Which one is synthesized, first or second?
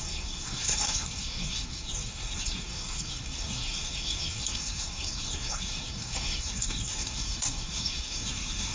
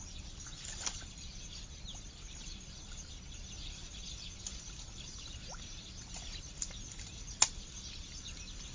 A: first